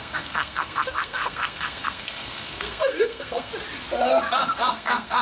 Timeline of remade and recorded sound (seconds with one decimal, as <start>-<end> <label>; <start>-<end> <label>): 0.0-3.5 remade; 3.5-4.3 recorded; 4.3-5.2 remade